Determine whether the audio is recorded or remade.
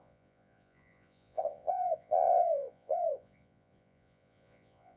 remade